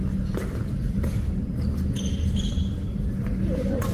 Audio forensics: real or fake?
real